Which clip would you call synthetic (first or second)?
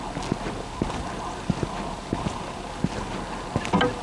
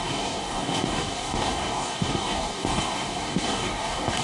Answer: second